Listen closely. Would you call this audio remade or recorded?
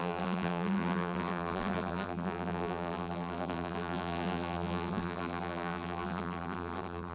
remade